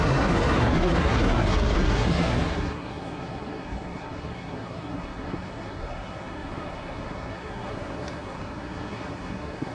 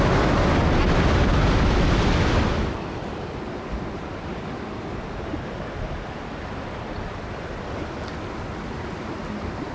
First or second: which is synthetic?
first